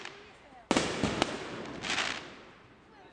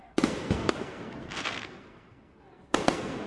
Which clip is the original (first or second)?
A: first